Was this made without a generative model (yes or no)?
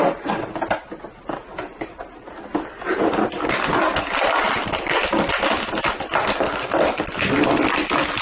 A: yes